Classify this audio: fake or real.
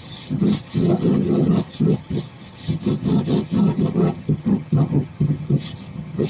fake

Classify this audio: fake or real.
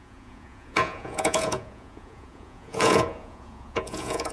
fake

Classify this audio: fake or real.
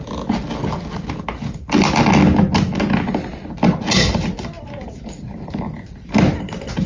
real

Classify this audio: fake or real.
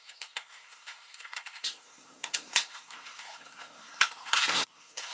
fake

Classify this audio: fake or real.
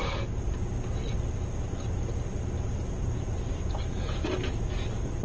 real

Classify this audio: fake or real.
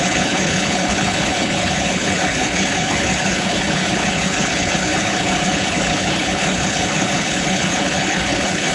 fake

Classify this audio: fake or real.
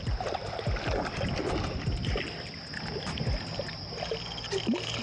real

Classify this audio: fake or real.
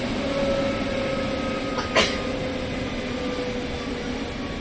real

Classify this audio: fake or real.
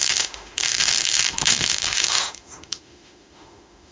fake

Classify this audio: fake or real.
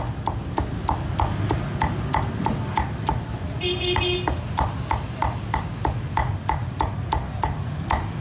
real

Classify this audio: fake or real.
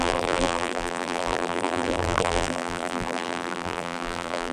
fake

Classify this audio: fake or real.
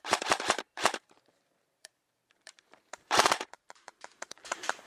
fake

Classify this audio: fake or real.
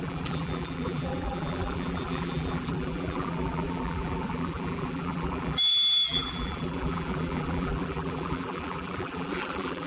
fake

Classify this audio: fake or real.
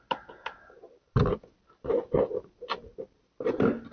real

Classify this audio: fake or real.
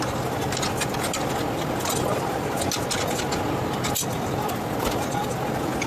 real